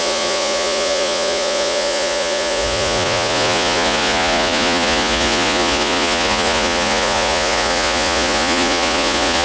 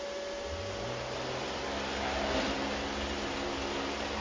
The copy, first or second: first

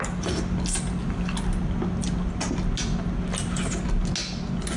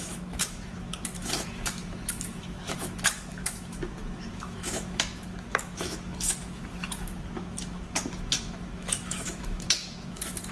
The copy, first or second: second